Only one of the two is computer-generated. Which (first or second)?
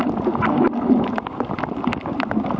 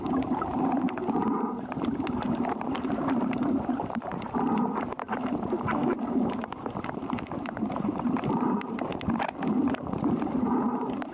second